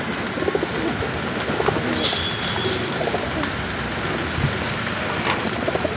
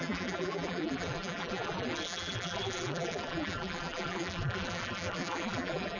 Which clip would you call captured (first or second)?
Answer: first